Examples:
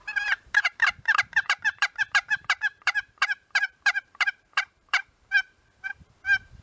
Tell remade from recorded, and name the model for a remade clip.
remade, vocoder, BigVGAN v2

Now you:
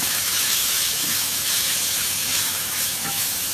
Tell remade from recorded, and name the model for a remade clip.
remade, autoencoder, DAC-VAE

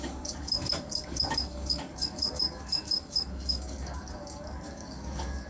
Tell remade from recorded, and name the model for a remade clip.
remade, codec, DAC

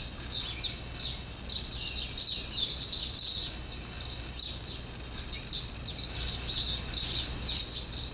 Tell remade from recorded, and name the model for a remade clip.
recorded